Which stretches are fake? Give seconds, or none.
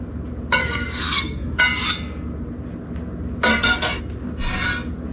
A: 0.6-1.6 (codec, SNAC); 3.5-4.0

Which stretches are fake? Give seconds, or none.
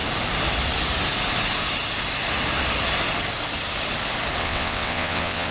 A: 4.4-5.5 (vocoder, WaveNeXt)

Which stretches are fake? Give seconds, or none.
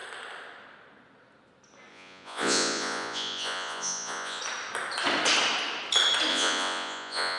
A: 1.9-4.4 (vocoder, Vocos); 6.3-7.4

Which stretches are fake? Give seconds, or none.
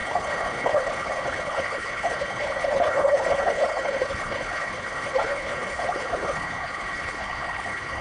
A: 0.0-8.0 (codec, HILCodec)